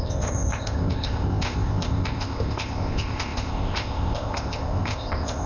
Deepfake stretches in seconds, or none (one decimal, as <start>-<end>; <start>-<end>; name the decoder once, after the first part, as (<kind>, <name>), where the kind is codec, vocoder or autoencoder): 0.0-5.5 (codec, ZipCodec)